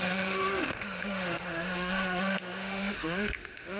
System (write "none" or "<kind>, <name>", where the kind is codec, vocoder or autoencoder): autoencoder, DAC-VAE